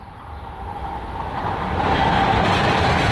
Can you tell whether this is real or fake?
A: real